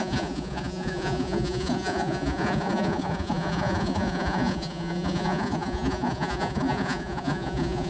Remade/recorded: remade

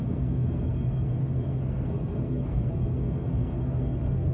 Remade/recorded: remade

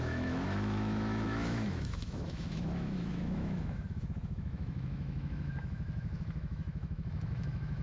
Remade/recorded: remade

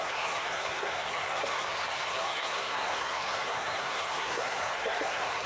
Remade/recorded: remade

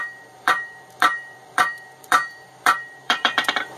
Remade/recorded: remade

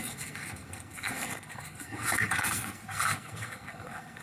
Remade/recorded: remade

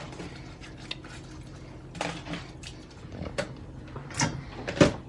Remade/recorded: recorded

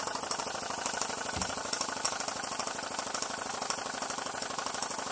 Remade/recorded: recorded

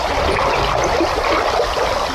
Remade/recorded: recorded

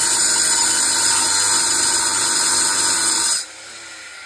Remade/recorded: recorded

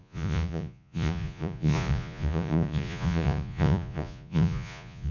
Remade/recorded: remade